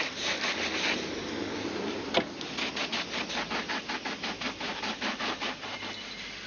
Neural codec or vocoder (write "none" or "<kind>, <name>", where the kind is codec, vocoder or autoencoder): none